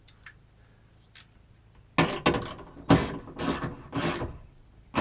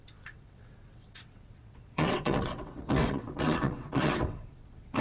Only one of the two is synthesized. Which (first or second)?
second